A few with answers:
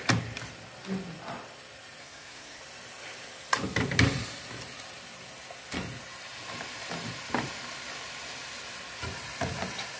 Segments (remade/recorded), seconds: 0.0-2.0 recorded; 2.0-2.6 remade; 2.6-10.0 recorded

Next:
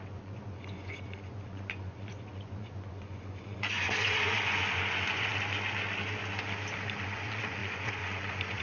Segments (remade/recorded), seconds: 0.0-5.3 remade; 5.3-7.0 recorded; 7.0-8.6 remade

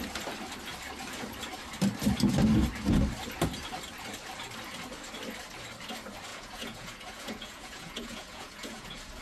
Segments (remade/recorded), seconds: 0.0-6.3 recorded; 6.3-9.2 remade

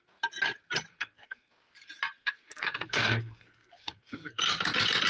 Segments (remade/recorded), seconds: 0.0-0.9 recorded; 0.9-1.5 remade; 1.5-2.2 recorded; 2.2-4.4 remade; 4.4-5.1 recorded

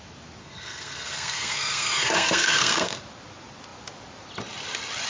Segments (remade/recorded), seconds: 0.0-0.4 recorded; 0.4-3.0 remade; 3.0-5.1 recorded

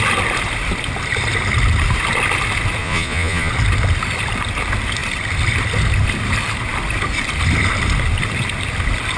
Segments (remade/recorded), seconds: 0.0-2.8 recorded; 2.8-3.5 remade; 3.5-9.2 recorded